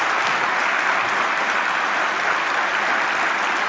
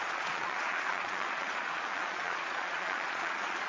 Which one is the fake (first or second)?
second